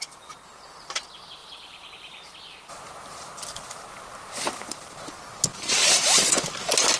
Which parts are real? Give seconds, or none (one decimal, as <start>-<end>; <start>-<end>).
0.0-1.4; 4.9-5.5; 6.2-7.0